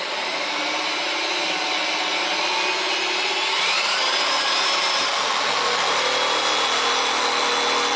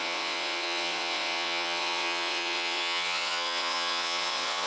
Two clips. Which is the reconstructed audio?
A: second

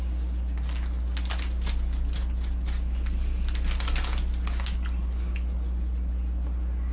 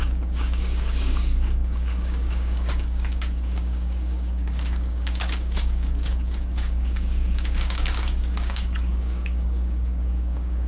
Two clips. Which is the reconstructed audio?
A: second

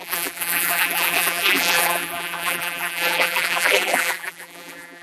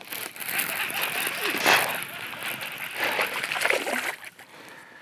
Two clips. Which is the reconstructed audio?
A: first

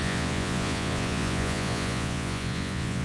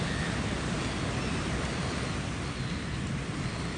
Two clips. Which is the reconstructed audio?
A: first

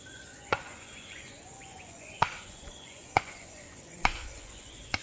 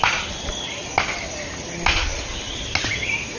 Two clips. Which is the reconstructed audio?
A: first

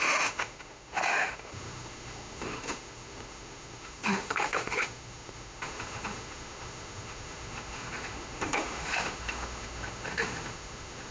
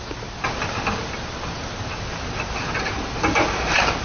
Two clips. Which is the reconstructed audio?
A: first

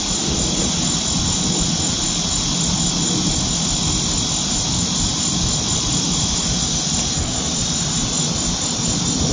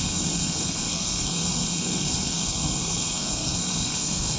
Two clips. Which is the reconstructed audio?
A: second